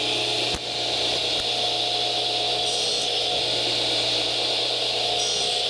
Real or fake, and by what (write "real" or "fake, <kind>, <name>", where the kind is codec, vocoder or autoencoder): real